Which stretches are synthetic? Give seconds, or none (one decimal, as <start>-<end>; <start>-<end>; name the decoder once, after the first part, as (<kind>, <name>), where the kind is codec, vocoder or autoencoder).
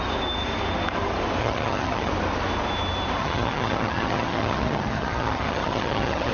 1.4-2.1 (vocoder, HiFi-GAN); 3.2-6.3